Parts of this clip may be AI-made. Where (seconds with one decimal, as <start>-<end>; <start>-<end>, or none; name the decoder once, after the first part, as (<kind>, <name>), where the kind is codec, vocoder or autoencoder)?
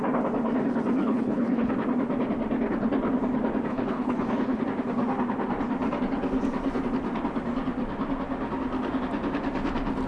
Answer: 1.0-1.7 (codec, HILCodec); 3.7-4.6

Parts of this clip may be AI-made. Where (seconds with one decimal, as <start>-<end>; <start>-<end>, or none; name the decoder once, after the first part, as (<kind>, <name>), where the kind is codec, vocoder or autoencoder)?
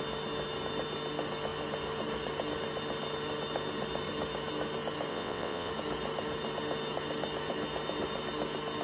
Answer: 5.1-5.7 (vocoder, WaveNeXt)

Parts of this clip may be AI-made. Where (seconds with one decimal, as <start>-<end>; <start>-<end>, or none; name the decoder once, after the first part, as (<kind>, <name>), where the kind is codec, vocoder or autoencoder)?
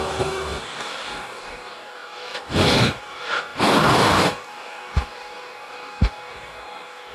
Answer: 0.0-7.1 (codec, DAC)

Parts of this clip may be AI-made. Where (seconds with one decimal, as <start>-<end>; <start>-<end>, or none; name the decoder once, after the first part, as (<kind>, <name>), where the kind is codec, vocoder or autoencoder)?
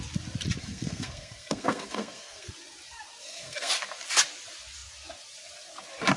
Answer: 0.6-2.5 (codec, SNAC); 3.2-3.7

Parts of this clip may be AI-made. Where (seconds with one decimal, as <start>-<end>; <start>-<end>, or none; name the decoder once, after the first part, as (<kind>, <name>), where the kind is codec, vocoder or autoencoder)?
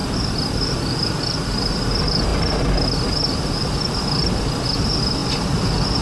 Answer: none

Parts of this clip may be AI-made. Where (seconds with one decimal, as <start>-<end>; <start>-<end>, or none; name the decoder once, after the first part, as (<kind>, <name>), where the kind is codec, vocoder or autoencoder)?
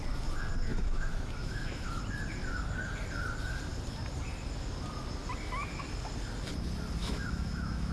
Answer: 0.7-2.0 (autoencoder, DAC-VAE); 7.0-7.9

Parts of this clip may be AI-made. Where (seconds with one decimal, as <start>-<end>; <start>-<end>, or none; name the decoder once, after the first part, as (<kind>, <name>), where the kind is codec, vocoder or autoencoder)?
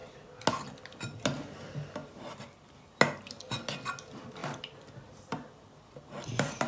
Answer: 2.0-2.8 (vocoder, BigVGAN v2); 4.4-6.7